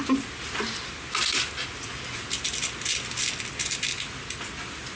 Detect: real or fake real